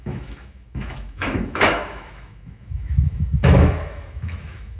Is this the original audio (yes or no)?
no